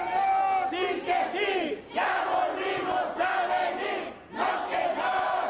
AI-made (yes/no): no